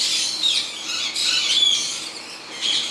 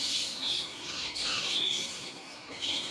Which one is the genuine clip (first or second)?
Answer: first